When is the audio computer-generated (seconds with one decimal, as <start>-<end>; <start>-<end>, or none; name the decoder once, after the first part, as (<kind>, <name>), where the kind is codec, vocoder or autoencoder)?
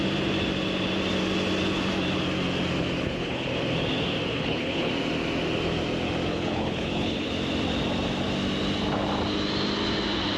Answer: 3.0-3.5 (codec, HILCodec); 4.3-4.9; 6.3-7.3